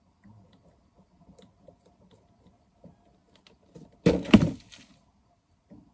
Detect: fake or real real